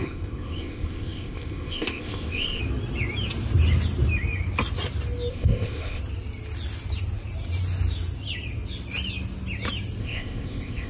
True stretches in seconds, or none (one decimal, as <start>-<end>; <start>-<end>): 2.6-5.3; 6.0-10.0